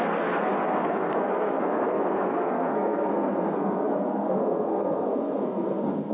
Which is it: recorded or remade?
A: remade